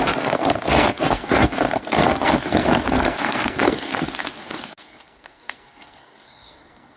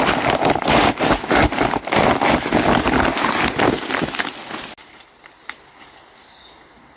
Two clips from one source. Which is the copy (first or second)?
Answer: first